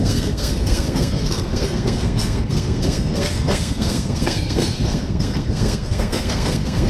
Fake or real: fake